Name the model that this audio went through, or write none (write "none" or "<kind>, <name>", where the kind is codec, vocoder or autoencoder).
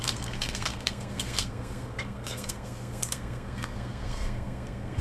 codec, SNAC